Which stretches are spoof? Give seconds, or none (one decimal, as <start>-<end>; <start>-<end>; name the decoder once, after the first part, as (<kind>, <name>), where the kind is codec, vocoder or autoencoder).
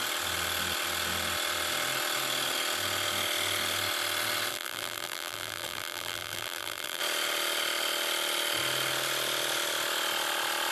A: 4.5-7.0 (vocoder, BigVGAN v2)